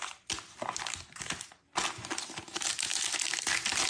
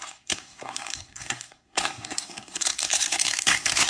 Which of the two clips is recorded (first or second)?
first